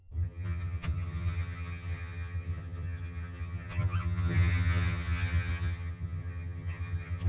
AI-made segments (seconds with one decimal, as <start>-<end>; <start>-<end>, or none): 0.0-7.3